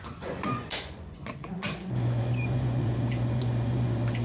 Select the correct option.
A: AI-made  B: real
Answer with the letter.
A